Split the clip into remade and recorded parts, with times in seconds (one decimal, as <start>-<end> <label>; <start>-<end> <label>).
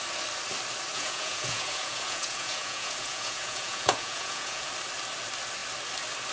0.0-0.9 recorded; 0.9-4.7 remade; 4.7-6.3 recorded